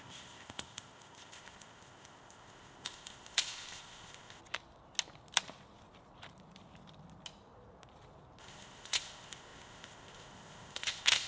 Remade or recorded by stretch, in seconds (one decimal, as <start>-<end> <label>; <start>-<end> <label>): 0.0-4.4 remade; 4.4-8.4 recorded; 8.4-11.3 remade